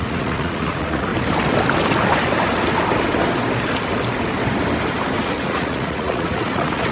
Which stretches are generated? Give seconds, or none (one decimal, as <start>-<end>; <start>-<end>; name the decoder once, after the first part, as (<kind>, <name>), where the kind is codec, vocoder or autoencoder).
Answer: 0.0-1.1 (vocoder, Vocos); 5.2-6.9